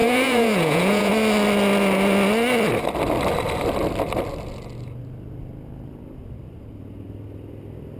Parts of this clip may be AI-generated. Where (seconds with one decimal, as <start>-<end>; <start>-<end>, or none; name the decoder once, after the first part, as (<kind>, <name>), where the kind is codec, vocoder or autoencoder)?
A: 0.0-1.1 (vocoder, Vocos)